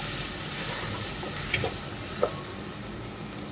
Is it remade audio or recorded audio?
recorded